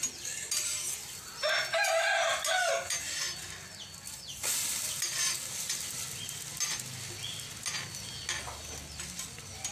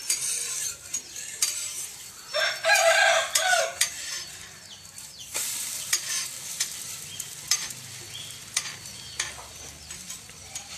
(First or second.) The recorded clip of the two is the first